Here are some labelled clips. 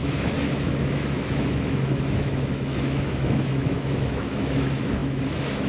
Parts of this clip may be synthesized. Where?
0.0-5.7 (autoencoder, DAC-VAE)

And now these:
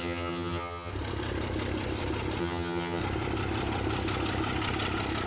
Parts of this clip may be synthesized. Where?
0.0-0.9 (vocoder, HiFi-GAN); 2.4-3.0

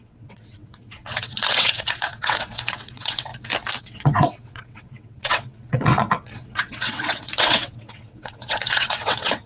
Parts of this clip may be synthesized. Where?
0.0-3.3 (vocoder, WaveNeXt); 3.8-9.5

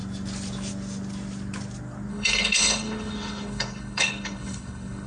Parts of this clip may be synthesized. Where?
2.1-5.1 (codec, HILCodec)